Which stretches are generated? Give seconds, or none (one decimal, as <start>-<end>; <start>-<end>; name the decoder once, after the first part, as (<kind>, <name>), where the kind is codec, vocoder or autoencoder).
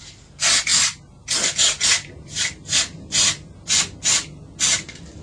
none